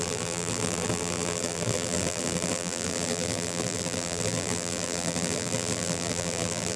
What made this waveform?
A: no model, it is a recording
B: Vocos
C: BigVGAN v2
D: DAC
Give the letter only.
C